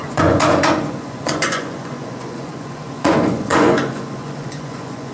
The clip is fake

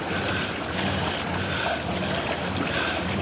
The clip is real